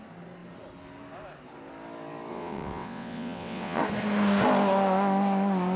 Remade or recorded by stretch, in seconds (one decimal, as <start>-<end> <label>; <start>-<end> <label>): 0.0-2.3 recorded; 2.3-3.8 remade; 3.8-5.8 recorded